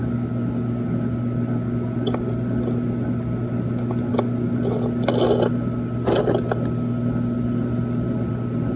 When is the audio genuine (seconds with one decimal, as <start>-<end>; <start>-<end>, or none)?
0.0-8.8